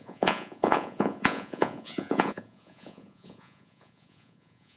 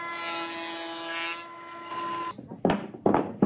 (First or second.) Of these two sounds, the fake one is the first